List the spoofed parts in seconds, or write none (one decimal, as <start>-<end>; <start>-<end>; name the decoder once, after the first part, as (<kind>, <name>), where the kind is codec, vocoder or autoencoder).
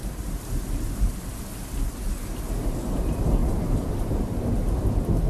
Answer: 0.0-1.3 (vocoder, BigVGAN v2); 3.4-4.1